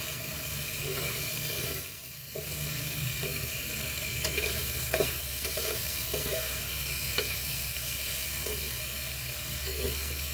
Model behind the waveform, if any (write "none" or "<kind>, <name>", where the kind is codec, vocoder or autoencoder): codec, SNAC